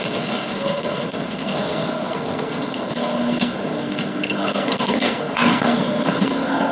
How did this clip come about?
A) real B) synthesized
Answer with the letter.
B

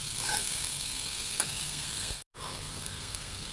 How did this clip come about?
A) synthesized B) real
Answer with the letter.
A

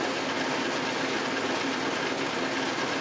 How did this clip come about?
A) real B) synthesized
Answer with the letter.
A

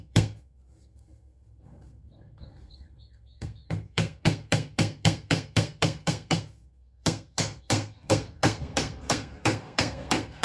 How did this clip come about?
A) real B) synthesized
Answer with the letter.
B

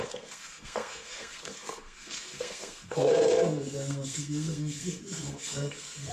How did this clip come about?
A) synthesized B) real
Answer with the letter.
A